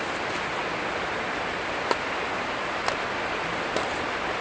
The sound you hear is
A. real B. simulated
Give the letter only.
A